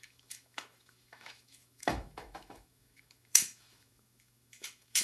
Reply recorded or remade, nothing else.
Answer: remade